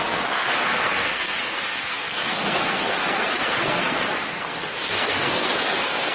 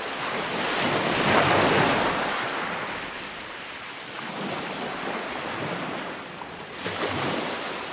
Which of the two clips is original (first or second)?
second